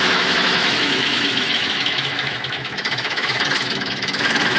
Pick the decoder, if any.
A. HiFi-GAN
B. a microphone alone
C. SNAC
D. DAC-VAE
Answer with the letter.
D